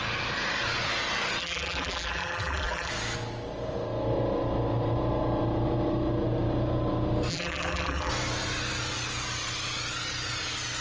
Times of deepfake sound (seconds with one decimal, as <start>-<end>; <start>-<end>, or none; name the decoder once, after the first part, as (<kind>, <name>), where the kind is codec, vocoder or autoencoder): 1.4-2.9 (vocoder, BigVGAN v2); 7.3-8.1